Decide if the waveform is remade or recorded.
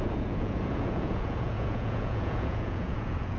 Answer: remade